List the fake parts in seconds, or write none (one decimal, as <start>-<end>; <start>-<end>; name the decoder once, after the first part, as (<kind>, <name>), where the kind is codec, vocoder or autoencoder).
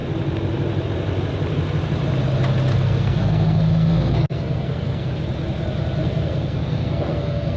2.7-5.2 (codec, SNAC); 6.0-7.6